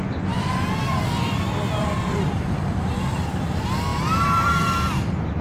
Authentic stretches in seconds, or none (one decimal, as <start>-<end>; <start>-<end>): 0.0-5.4